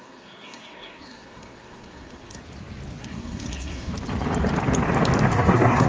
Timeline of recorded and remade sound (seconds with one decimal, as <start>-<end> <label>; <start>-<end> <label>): 0.0-2.4 remade; 2.4-3.0 recorded; 3.0-3.9 remade; 3.9-5.3 recorded; 5.3-5.9 remade